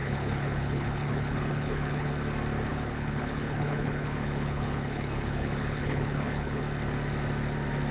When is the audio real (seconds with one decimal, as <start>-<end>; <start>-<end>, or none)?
2.1-2.7; 6.6-7.9